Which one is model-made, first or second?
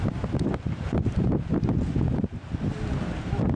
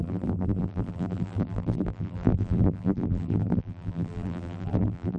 second